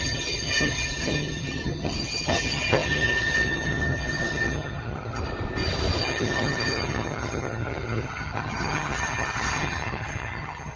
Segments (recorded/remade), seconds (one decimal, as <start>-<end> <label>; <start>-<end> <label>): 0.0-5.2 remade; 5.2-6.0 recorded; 6.0-10.8 remade